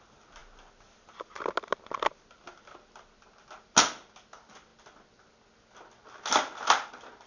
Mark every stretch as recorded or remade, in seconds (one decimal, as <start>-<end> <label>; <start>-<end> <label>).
0.0-7.3 recorded